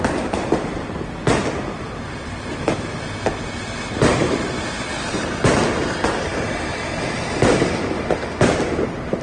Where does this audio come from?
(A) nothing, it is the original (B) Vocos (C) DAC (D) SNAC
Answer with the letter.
A